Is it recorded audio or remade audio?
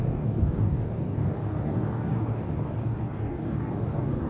remade